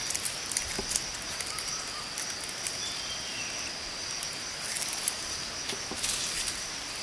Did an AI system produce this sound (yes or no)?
no